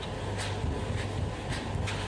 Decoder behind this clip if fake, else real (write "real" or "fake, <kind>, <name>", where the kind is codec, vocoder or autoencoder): real